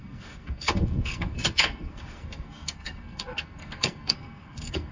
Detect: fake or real fake